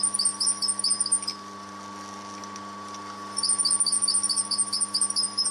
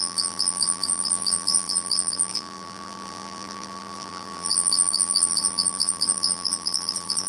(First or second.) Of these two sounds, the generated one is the second